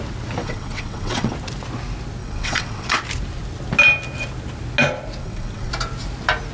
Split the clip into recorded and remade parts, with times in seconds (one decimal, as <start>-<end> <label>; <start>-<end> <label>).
0.0-0.4 recorded; 0.4-1.3 remade; 1.3-2.2 recorded; 2.2-3.0 remade; 3.0-5.2 recorded; 5.2-5.7 remade; 5.7-6.5 recorded